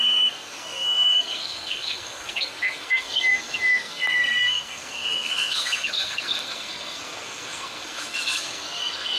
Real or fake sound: fake